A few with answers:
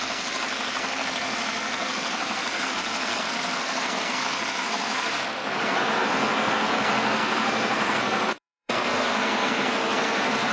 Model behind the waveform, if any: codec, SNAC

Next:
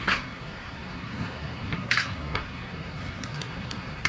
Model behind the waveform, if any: codec, SNAC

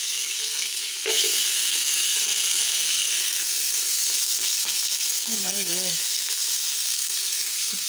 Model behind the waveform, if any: codec, SNAC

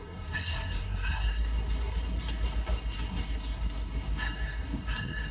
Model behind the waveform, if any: codec, SNAC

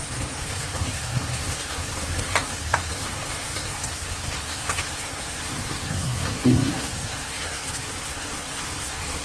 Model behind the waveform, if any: codec, SNAC